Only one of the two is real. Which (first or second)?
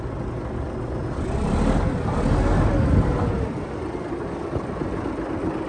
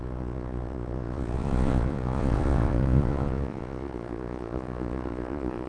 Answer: first